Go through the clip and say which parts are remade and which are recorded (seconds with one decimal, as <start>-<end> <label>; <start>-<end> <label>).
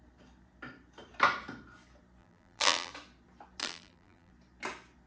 0.0-2.2 recorded; 2.2-2.9 remade; 2.9-3.6 recorded; 3.6-4.3 remade; 4.3-5.1 recorded